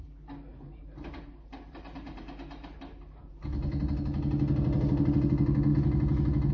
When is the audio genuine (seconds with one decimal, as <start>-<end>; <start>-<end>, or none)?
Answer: 0.0-0.5; 3.8-6.5